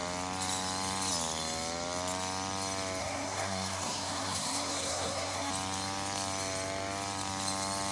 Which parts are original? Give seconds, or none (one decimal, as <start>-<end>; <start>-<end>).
0.0-3.0; 5.5-7.9